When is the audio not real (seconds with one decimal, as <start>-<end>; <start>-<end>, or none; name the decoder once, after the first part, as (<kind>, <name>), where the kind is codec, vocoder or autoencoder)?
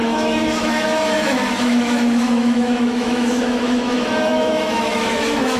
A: 0.0-5.6 (autoencoder, DAC-VAE)